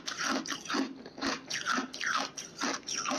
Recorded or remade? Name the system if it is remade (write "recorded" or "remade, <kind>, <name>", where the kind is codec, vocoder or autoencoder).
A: recorded